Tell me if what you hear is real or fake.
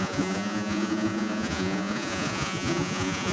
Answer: fake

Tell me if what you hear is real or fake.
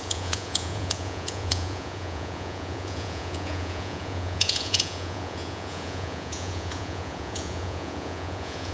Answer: fake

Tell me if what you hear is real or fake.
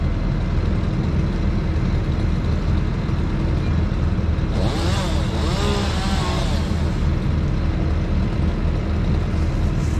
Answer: real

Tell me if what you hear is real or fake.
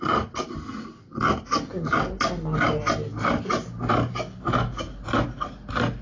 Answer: real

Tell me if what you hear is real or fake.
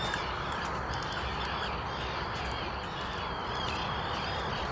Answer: real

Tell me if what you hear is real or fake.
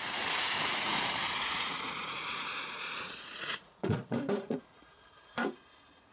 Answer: fake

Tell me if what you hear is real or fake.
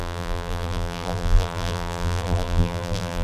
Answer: fake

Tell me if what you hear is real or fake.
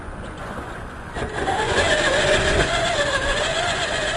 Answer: fake